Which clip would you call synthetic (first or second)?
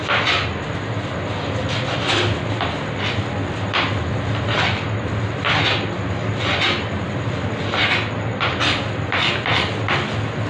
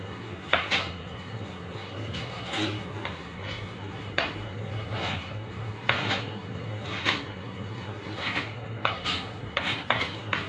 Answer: second